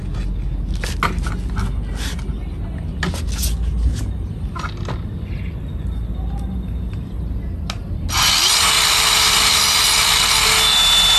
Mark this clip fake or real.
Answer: real